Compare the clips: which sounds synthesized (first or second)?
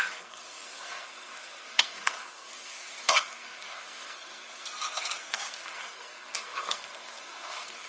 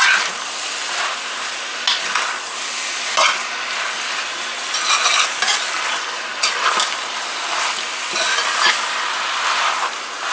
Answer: first